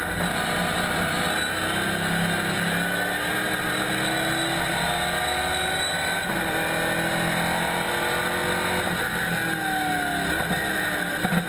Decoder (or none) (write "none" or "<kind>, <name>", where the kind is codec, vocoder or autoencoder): none